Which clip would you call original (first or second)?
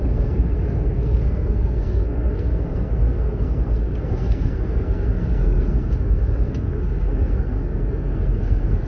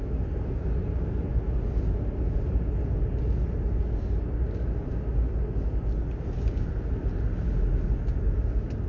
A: second